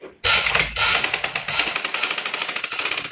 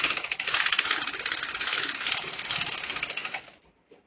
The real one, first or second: first